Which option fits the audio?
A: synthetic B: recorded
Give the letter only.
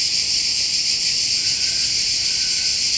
B